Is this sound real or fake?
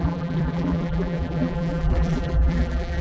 fake